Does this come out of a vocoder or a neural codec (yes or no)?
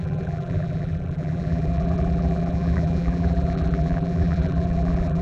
yes